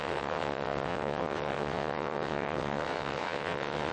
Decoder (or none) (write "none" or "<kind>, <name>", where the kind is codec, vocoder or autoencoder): vocoder, WaveNeXt